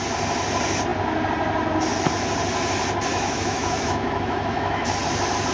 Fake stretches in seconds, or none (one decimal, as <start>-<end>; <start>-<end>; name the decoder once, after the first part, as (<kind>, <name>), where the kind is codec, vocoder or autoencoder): 3.1-4.9 (autoencoder, DAC-VAE)